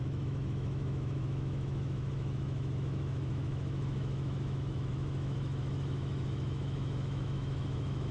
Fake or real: fake